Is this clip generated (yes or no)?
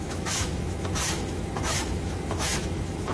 yes